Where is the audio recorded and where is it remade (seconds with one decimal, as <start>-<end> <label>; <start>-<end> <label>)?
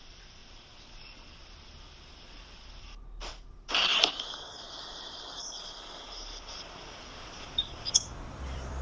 0.0-0.4 remade; 0.4-2.8 recorded; 2.8-8.8 remade